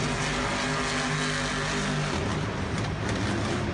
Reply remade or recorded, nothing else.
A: recorded